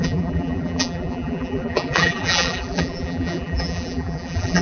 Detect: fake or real fake